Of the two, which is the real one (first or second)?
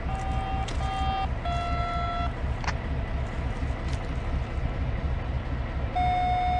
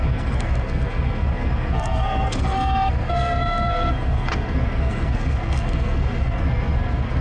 first